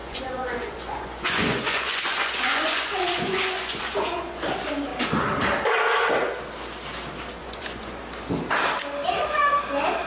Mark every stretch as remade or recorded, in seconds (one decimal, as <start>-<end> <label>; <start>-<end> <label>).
0.0-4.4 remade; 4.4-7.4 recorded; 7.4-8.0 remade; 8.0-10.1 recorded